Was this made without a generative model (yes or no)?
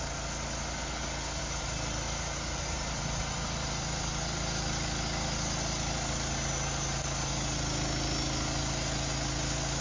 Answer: yes